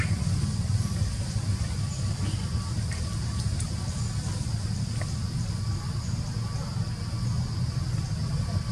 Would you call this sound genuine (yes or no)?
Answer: yes